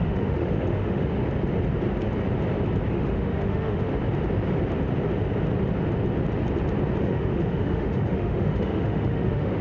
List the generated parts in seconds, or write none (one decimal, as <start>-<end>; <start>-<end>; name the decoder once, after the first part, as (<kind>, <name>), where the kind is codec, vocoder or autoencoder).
0.0-1.2 (autoencoder, DAC-VAE); 2.9-3.9; 7.0-9.6